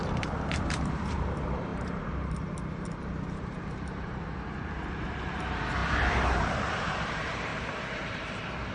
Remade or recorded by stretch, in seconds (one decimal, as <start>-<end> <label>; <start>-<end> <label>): 0.0-7.5 remade; 7.5-8.7 recorded